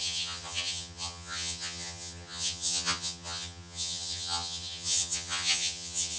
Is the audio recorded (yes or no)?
no